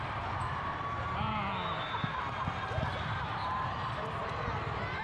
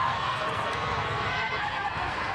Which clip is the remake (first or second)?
second